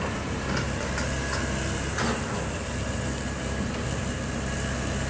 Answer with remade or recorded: recorded